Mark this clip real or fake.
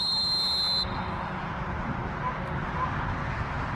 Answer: real